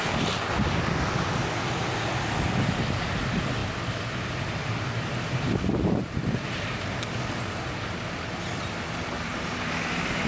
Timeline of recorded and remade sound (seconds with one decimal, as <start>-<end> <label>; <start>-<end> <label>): 0.0-10.3 recorded